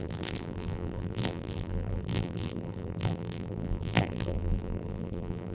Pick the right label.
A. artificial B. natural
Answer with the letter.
A